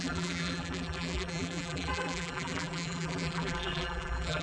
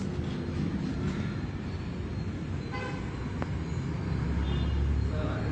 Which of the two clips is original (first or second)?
second